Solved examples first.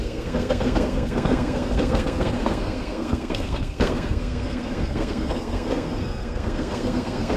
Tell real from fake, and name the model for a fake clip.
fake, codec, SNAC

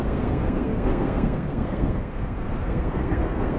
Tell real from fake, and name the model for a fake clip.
fake, codec, SNAC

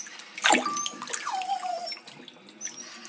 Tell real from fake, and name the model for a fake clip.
real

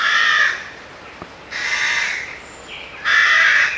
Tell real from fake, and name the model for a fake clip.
real